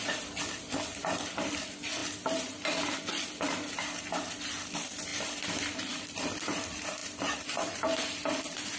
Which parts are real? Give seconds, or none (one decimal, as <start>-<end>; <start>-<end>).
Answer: none